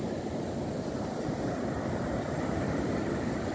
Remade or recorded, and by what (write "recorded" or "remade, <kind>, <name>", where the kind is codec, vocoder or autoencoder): recorded